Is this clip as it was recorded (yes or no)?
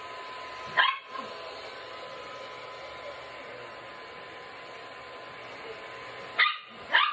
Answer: yes